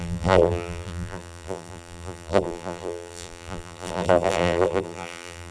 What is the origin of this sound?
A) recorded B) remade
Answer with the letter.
B